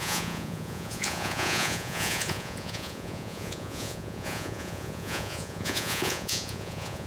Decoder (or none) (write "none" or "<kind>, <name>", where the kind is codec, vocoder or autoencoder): vocoder, Vocos